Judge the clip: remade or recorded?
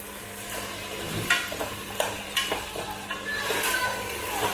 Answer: recorded